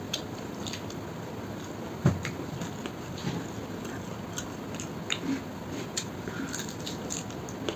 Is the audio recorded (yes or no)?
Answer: yes